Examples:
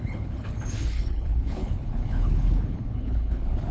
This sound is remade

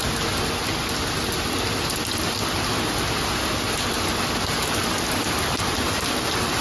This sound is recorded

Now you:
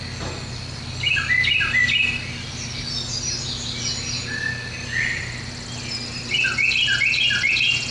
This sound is recorded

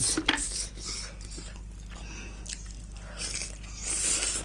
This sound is recorded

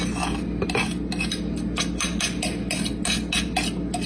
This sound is recorded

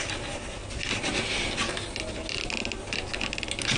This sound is recorded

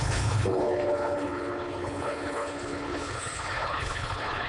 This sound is remade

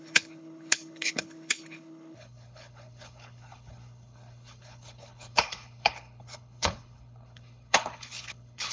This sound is remade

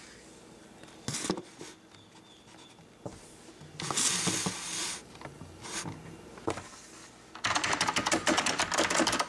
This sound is recorded